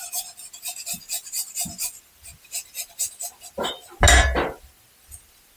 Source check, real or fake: real